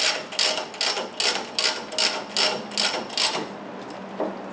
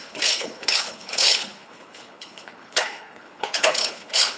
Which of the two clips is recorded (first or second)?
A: first